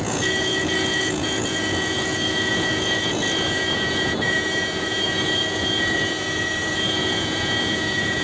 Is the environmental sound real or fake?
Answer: fake